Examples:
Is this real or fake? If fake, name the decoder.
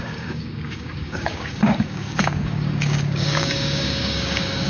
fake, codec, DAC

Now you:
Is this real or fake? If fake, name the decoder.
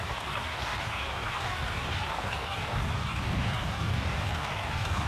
fake, codec, DAC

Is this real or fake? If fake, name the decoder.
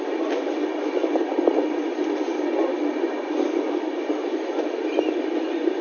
real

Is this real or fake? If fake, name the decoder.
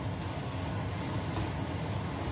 real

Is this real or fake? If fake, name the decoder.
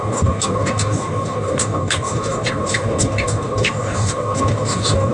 fake, codec, DAC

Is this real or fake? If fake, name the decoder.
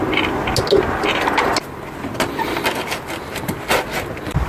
real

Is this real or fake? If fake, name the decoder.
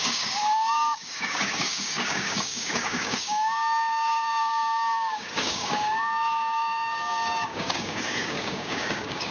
fake, codec, DAC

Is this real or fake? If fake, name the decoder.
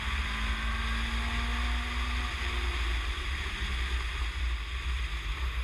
real